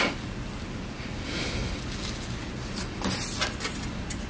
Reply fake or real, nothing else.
real